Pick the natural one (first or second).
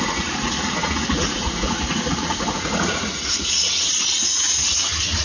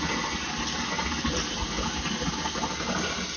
second